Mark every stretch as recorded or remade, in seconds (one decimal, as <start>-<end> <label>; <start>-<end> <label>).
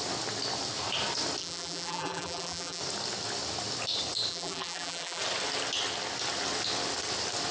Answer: 0.0-1.4 recorded; 1.4-2.8 remade; 2.8-4.3 recorded; 4.3-5.2 remade; 5.2-7.5 recorded